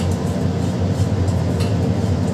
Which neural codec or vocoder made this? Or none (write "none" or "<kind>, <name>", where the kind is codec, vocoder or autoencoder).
none